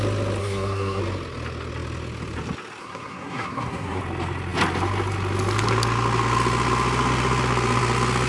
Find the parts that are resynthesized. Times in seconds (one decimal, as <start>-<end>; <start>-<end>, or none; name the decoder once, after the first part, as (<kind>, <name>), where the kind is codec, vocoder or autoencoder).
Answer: 0.4-1.0 (codec, SNAC); 2.8-4.0